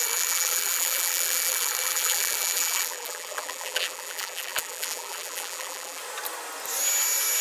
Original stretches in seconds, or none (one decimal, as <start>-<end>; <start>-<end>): 6.0-7.4